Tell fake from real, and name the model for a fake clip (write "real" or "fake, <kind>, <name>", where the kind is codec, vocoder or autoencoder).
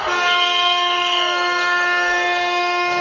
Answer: fake, codec, DAC